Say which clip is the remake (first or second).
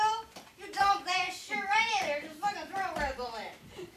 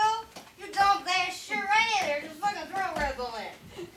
first